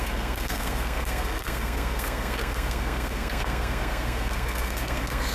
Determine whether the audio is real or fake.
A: fake